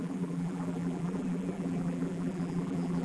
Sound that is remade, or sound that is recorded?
remade